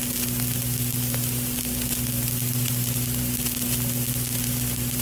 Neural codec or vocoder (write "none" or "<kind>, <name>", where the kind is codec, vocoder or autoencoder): none